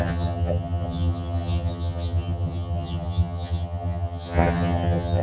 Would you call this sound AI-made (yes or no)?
yes